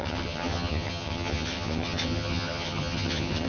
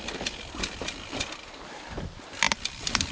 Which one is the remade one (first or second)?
first